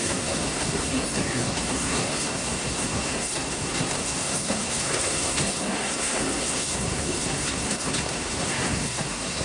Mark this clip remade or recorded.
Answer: remade